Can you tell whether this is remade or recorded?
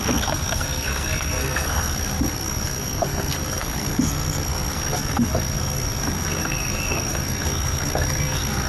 remade